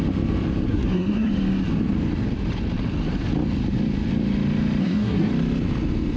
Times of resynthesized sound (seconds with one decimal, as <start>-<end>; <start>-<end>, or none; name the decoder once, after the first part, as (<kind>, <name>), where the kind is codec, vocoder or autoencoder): 0.7-1.3 (codec, SNAC); 4.8-5.3